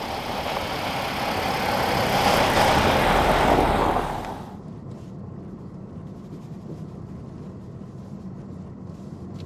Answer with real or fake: real